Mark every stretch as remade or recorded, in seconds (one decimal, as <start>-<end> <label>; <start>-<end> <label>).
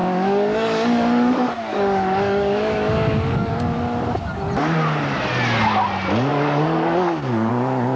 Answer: 0.0-3.5 remade; 3.5-6.3 recorded; 6.3-7.5 remade; 7.5-8.0 recorded